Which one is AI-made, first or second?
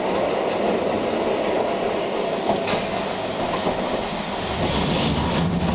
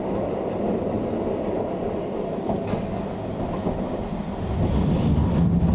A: second